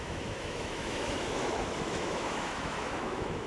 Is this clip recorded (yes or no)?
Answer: no